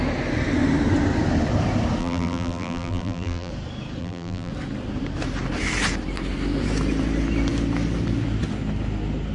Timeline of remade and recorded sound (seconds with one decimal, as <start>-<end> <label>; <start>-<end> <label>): 0.0-2.0 recorded; 2.0-3.5 remade; 3.5-4.0 recorded; 4.0-4.5 remade; 4.5-9.3 recorded